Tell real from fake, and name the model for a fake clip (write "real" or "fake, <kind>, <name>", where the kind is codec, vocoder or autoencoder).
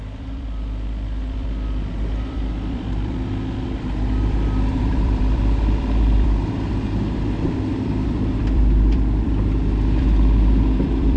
fake, vocoder, BigVGAN v2